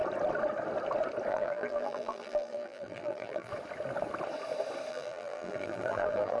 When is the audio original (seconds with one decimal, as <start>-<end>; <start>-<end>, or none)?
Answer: 0.0-1.3; 3.5-4.9